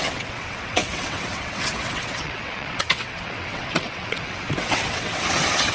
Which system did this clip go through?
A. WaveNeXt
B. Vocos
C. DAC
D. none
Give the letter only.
A